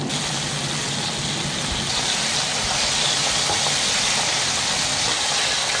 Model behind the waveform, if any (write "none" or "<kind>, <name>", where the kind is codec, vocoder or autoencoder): none